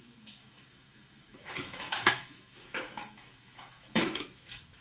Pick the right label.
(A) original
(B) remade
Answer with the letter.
B